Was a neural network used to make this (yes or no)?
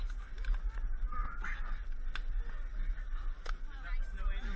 no